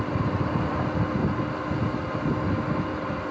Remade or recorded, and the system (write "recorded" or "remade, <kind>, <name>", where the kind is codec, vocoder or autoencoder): recorded